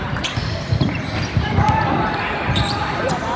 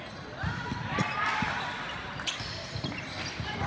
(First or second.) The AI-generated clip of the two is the first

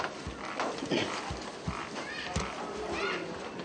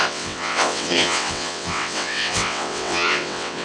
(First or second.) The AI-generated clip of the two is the second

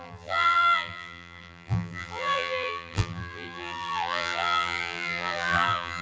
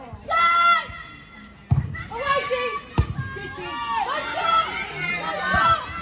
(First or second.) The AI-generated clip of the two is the first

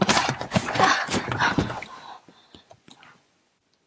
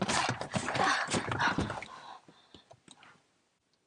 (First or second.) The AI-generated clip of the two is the first